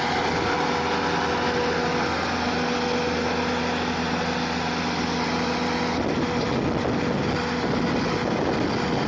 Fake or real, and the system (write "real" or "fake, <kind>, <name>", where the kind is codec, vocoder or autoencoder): real